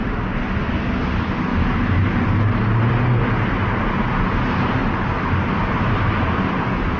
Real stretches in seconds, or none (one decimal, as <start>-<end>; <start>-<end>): 0.0-7.0